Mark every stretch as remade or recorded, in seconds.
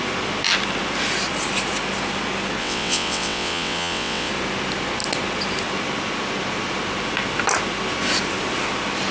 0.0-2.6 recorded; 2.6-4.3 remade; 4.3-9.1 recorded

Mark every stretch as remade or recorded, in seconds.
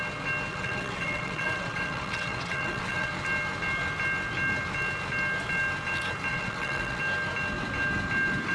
0.0-0.5 recorded; 0.5-3.1 remade; 3.1-6.3 recorded; 6.3-7.0 remade; 7.0-8.5 recorded